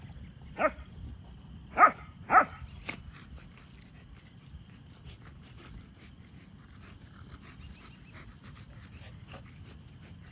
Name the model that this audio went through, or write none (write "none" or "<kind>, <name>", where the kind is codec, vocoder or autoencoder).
none